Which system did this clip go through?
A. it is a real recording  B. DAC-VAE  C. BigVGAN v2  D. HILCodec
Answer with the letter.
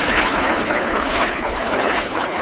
D